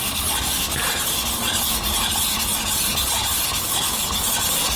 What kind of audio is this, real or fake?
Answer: real